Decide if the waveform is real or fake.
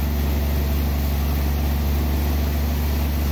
real